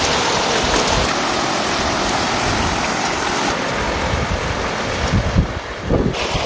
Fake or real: real